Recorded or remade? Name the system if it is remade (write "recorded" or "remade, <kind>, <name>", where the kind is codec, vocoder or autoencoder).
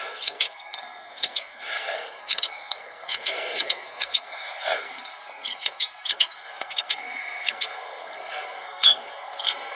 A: remade, codec, SNAC